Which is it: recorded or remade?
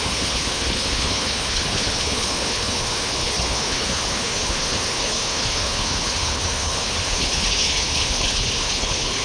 remade